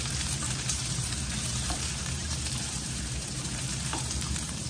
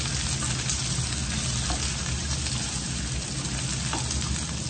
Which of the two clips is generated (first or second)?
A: first